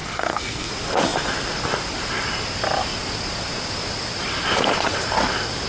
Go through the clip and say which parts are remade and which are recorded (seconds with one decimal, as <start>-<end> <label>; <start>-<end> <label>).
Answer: 0.0-0.7 remade; 0.7-5.7 recorded